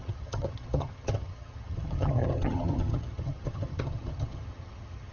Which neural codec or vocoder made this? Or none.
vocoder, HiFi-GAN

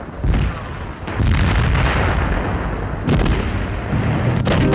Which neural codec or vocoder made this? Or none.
none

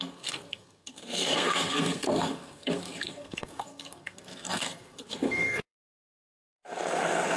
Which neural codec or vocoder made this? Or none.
codec, SNAC